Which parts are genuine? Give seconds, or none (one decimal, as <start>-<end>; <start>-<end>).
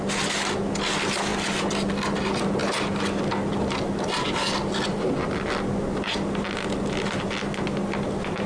0.0-8.5